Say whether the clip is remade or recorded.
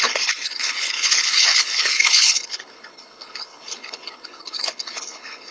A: remade